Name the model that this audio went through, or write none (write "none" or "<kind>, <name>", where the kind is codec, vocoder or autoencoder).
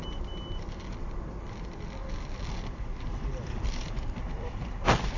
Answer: none